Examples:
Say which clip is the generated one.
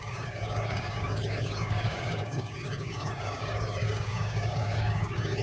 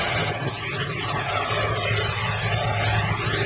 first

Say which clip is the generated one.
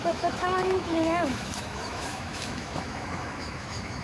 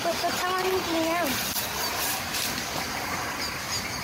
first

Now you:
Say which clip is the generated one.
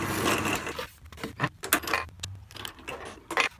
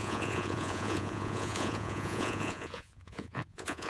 second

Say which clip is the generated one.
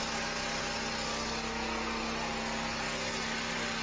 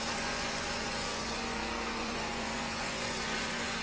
second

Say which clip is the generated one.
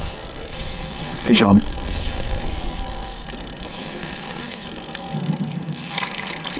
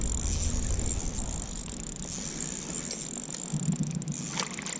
first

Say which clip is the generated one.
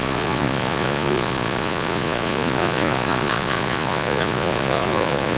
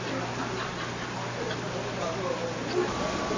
first